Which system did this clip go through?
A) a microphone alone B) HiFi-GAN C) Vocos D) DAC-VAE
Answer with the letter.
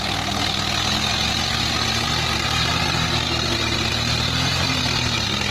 A